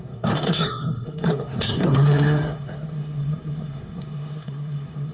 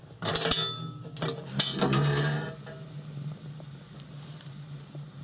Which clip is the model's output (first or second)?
first